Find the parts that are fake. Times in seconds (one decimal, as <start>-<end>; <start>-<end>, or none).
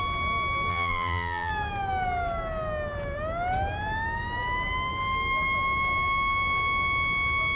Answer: 0.7-1.5